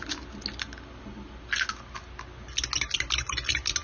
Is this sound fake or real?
real